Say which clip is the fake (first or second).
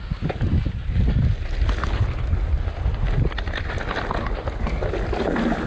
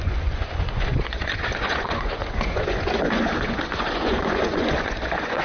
second